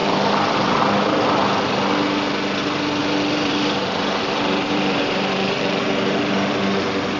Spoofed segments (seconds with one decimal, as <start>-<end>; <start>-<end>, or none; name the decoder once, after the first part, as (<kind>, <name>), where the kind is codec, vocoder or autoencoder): 0.0-0.8 (vocoder, BigVGAN v2); 3.0-6.2